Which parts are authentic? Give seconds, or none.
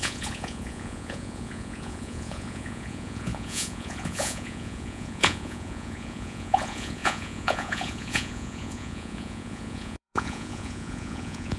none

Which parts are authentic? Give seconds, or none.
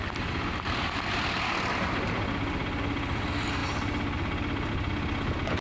0.0-5.6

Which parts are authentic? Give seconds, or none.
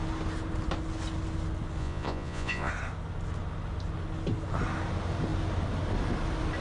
0.0-1.8; 2.7-6.6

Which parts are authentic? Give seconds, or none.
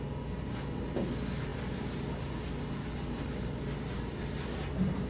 0.0-5.1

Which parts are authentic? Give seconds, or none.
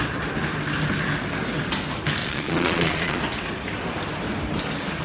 0.0-2.2; 3.2-5.0